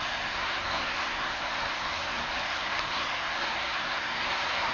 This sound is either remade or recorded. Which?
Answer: remade